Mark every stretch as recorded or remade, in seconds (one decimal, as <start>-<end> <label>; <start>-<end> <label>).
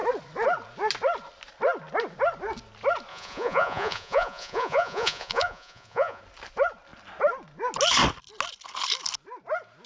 0.0-3.1 recorded; 3.1-6.2 remade; 6.2-9.9 recorded